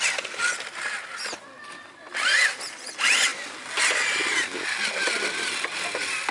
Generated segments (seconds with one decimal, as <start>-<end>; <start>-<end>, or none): none